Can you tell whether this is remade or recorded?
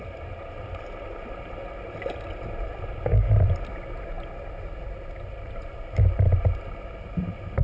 recorded